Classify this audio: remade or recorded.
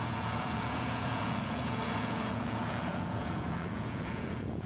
remade